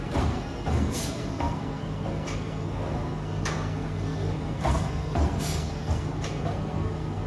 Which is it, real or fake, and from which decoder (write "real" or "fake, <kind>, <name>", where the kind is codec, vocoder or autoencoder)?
fake, codec, SNAC